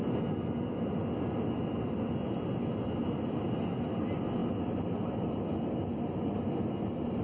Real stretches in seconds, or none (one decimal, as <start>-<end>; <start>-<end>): 0.0-7.2